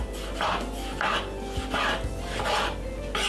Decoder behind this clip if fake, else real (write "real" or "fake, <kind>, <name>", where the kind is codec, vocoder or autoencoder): real